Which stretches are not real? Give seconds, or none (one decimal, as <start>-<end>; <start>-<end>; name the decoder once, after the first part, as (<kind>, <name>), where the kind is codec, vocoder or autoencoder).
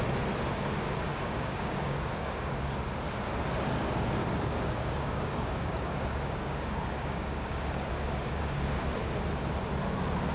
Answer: 1.1-2.8 (codec, DAC); 4.2-8.8